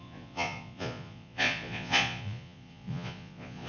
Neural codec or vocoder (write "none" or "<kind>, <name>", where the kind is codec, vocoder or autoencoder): vocoder, Vocos